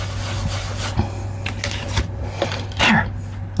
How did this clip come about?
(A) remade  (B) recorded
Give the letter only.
B